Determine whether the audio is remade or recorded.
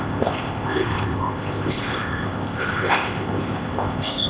remade